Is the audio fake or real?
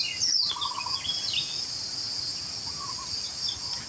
real